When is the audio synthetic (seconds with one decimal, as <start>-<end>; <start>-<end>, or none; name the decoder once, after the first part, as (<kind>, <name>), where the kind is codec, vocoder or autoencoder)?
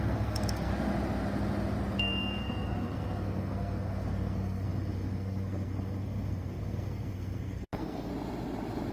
0.0-0.7 (codec, SNAC); 2.0-8.1